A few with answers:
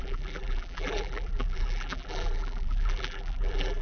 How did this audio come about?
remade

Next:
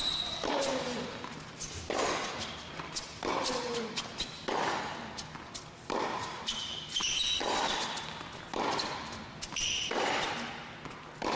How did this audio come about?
recorded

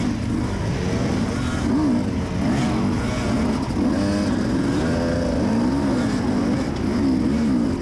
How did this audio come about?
recorded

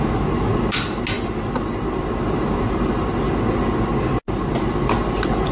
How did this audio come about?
recorded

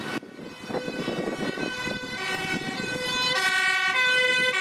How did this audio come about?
remade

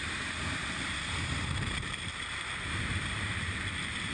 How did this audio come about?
remade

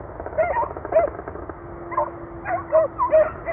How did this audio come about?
recorded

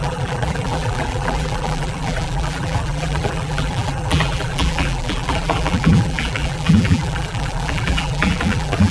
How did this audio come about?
remade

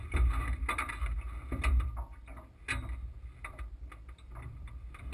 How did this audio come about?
recorded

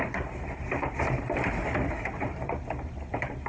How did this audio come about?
remade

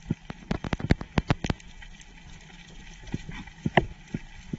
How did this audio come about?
recorded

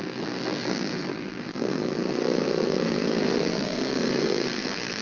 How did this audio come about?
remade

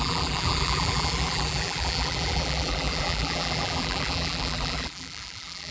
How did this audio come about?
remade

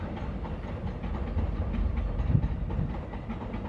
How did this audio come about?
recorded